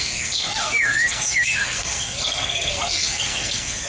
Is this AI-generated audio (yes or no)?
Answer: yes